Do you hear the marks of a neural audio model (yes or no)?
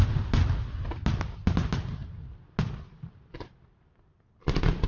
no